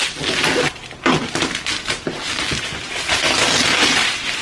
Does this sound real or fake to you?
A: real